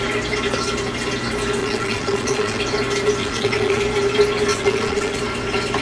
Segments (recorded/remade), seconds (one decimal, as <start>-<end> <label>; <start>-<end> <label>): 0.0-1.6 recorded; 1.6-2.6 remade; 2.6-3.2 recorded; 3.2-3.8 remade; 3.8-4.5 recorded; 4.5-5.2 remade; 5.2-5.8 recorded